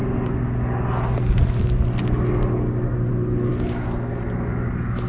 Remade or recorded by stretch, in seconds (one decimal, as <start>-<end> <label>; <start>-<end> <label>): 0.0-5.1 recorded